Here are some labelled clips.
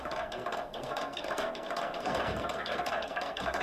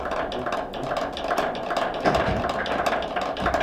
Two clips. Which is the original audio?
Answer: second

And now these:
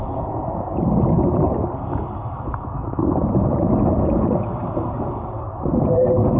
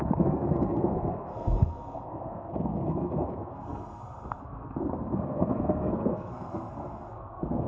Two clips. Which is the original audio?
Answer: first